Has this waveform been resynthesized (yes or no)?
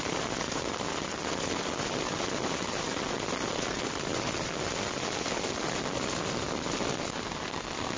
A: no